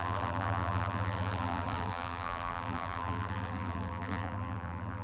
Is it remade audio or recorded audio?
remade